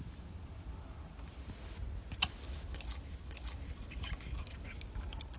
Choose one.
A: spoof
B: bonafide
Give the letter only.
B